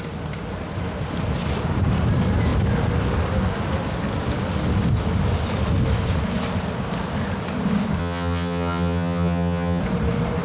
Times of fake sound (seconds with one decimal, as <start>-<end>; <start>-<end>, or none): 8.0-9.8